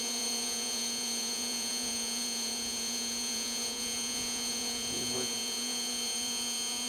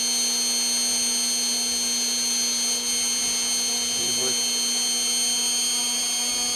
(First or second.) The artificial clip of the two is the first